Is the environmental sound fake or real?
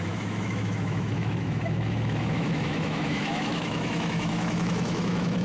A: fake